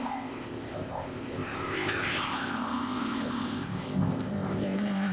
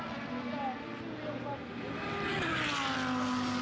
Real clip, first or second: second